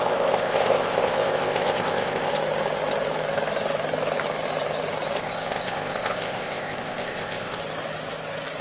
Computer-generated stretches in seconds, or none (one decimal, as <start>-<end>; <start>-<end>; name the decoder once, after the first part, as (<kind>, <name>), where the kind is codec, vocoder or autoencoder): 0.0-2.3 (codec, ZipCodec); 5.2-7.6